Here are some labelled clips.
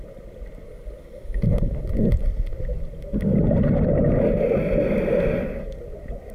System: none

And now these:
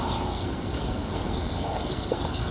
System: codec, SNAC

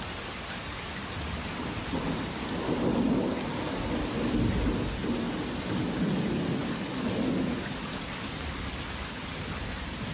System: none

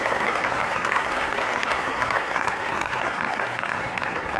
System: codec, SNAC